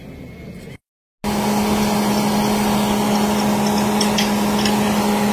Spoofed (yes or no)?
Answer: no